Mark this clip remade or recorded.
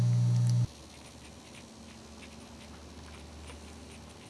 recorded